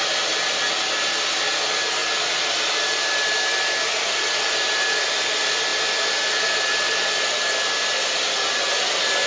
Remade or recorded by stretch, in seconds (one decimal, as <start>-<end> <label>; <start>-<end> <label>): 0.0-9.3 recorded